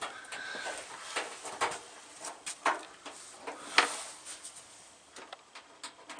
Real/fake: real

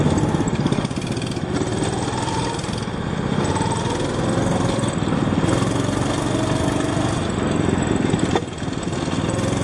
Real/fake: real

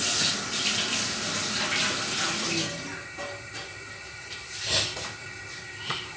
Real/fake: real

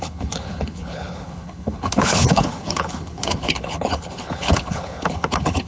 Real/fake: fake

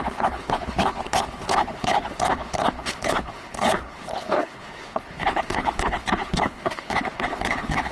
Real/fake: fake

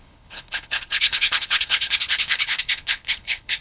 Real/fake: fake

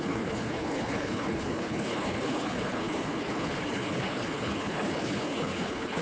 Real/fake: fake